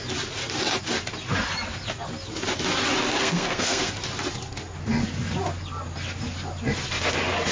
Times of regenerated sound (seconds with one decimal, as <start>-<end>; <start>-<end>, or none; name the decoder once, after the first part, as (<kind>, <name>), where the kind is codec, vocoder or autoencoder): 3.2-3.9 (codec, SNAC)